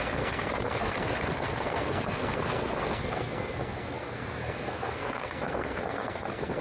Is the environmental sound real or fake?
fake